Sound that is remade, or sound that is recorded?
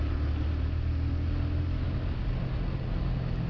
recorded